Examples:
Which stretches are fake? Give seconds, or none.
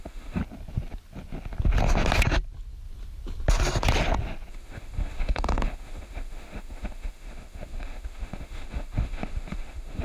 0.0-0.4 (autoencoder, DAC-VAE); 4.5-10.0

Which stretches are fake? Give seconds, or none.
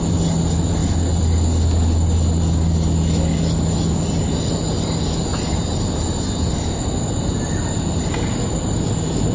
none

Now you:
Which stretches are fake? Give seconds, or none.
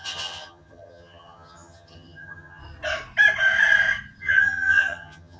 0.0-2.6 (vocoder, HiFi-GAN); 4.2-5.4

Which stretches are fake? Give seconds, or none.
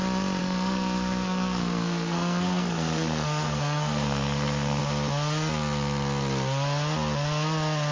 0.4-4.8 (codec, SNAC)